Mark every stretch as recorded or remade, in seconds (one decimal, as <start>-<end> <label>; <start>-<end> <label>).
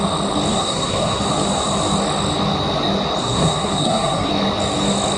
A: 0.0-0.5 recorded; 0.5-1.2 remade; 1.2-3.2 recorded; 3.2-4.3 remade; 4.3-5.2 recorded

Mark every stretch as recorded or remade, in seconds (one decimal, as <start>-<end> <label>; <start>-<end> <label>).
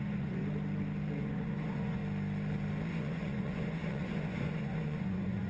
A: 0.0-0.4 remade; 0.4-1.2 recorded; 1.2-2.0 remade; 2.0-2.9 recorded; 2.9-5.5 remade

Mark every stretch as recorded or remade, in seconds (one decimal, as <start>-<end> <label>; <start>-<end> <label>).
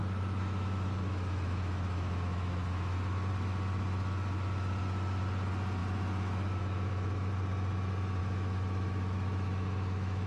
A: 0.0-3.3 remade; 3.3-5.8 recorded; 5.8-7.3 remade; 7.3-8.2 recorded; 8.2-10.3 remade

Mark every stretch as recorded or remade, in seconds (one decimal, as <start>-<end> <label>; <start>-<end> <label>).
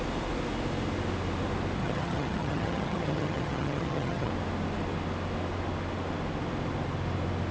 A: 0.0-1.8 recorded; 1.8-4.3 remade; 4.3-7.5 recorded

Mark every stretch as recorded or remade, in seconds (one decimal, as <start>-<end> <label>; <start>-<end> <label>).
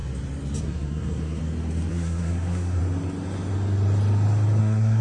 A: 0.0-0.6 recorded; 0.6-1.4 remade; 1.4-1.9 recorded; 1.9-2.8 remade; 2.8-4.6 recorded; 4.6-5.0 remade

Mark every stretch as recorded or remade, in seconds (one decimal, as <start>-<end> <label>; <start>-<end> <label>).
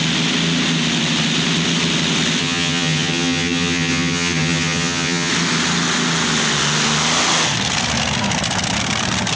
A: 0.0-2.4 recorded; 2.4-5.3 remade; 5.3-9.4 recorded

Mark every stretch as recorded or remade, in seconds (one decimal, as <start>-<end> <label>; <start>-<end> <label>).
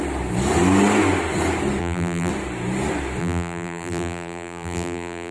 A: 0.0-1.8 recorded; 1.8-2.3 remade; 2.3-3.2 recorded; 3.2-5.3 remade